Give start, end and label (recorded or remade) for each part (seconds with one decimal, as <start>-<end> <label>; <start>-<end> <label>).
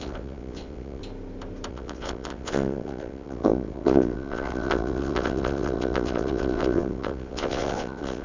0.0-1.0 remade; 1.0-1.7 recorded; 1.7-8.2 remade